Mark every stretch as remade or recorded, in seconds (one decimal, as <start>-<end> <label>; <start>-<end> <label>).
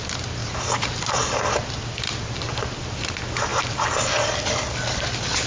0.0-0.4 recorded; 0.4-3.1 remade; 3.1-3.5 recorded; 3.5-5.0 remade; 5.0-5.5 recorded